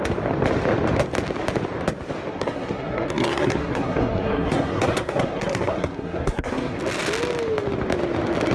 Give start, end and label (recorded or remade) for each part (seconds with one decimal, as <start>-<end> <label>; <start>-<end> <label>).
0.0-2.3 recorded; 2.3-6.8 remade; 6.8-8.5 recorded